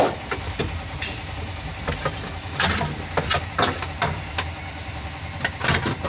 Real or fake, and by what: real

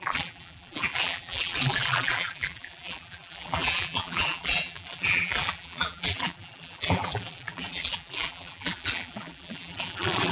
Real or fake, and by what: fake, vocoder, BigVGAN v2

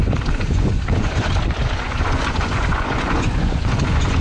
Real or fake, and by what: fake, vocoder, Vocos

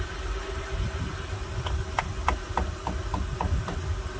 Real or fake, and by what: real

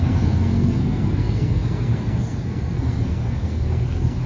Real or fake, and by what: fake, codec, SNAC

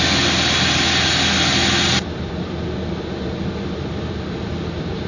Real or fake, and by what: real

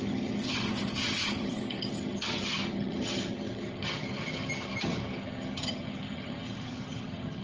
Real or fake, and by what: fake, vocoder, HiFi-GAN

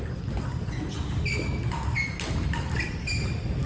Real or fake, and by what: real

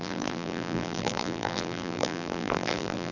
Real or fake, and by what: fake, vocoder, BigVGAN v2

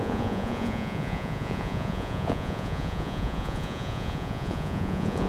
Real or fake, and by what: fake, vocoder, Vocos